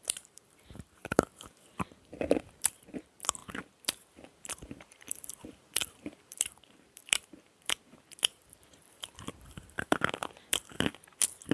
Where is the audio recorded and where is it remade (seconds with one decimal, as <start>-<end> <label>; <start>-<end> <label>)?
0.0-11.5 remade